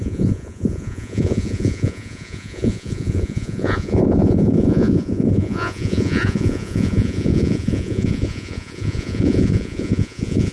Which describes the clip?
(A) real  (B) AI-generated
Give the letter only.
B